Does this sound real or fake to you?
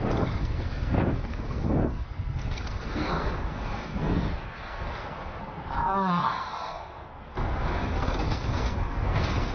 fake